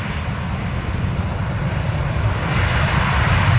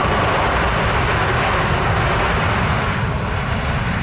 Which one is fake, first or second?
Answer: first